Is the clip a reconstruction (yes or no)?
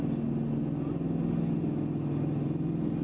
no